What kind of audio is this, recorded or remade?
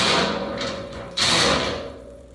remade